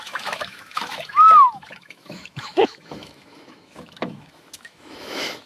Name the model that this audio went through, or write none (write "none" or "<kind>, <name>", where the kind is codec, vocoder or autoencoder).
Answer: autoencoder, DAC-VAE